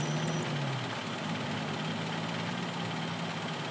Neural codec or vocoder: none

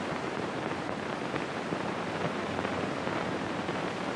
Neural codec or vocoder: vocoder, BigVGAN v2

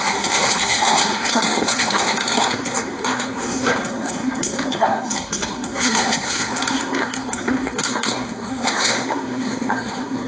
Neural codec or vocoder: codec, SNAC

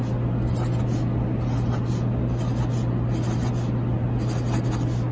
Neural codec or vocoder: none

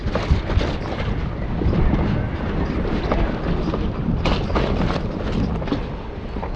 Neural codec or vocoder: none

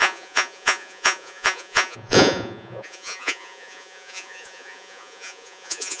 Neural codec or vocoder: vocoder, Vocos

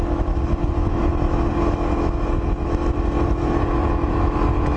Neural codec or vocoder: autoencoder, DAC-VAE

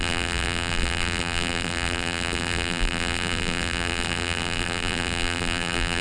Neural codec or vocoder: vocoder, BigVGAN v2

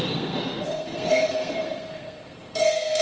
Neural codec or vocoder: codec, SNAC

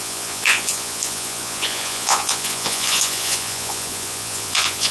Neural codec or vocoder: vocoder, Vocos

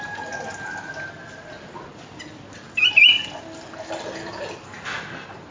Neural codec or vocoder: none